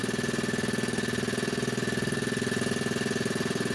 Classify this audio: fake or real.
real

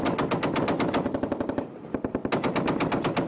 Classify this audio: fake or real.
real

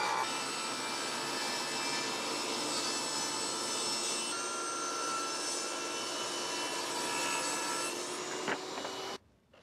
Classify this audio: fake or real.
real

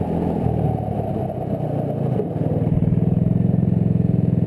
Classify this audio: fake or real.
real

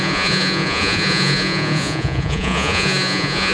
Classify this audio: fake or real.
fake